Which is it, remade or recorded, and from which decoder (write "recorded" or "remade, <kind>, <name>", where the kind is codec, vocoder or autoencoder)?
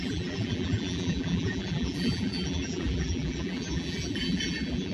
remade, vocoder, BigVGAN v2